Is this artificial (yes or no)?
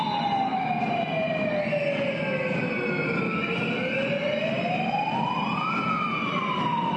no